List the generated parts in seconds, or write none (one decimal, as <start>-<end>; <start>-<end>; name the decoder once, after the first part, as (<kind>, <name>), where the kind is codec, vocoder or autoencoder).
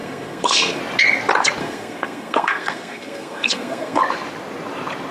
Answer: 0.0-0.8 (codec, SNAC); 1.6-4.0